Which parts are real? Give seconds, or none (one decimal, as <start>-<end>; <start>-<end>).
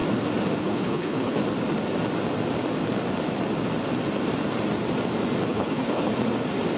0.0-0.6; 1.4-5.5; 6.1-6.8